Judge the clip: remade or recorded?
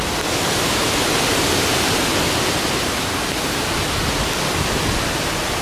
recorded